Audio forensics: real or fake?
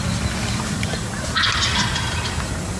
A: real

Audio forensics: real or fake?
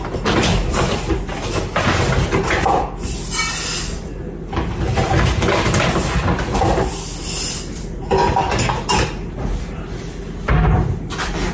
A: real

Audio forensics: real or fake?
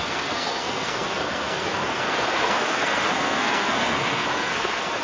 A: fake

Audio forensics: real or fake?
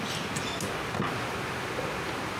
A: real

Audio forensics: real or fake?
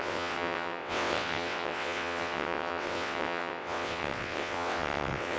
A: fake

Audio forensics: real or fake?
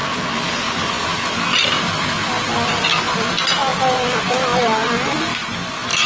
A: real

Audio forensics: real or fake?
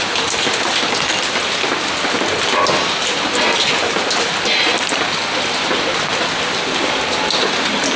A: real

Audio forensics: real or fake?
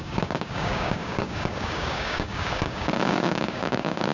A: fake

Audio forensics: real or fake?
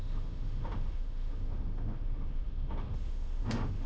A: fake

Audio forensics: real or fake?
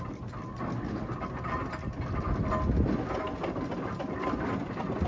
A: real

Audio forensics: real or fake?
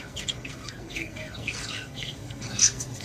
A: fake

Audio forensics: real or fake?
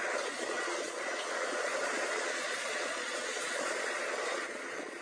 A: fake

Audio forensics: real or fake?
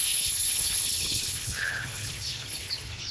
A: fake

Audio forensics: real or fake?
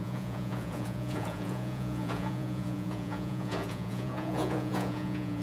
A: fake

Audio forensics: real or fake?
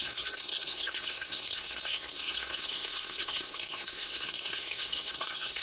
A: fake